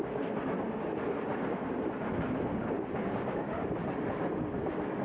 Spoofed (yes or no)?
no